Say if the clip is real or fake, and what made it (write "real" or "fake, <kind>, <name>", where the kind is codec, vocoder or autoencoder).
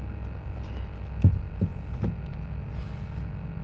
real